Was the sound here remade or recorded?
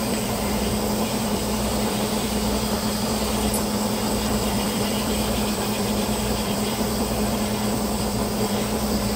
remade